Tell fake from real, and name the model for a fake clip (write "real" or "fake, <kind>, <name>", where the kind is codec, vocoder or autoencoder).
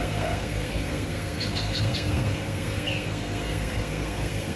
fake, codec, SNAC